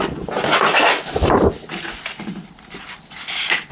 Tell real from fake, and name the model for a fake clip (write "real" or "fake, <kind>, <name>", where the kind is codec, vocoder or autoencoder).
real